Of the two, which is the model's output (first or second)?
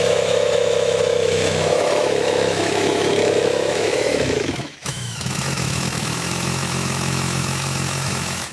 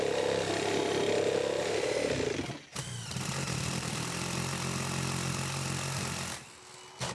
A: first